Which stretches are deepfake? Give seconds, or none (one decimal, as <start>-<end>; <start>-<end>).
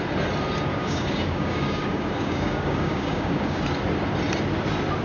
0.7-3.6